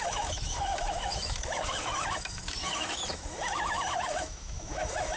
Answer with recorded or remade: remade